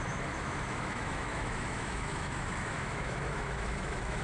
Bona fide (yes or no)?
no